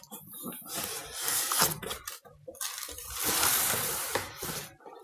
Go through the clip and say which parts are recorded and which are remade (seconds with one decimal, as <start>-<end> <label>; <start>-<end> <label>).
0.0-1.0 remade; 1.0-2.1 recorded; 2.1-2.5 remade; 2.5-3.3 recorded; 3.3-5.0 remade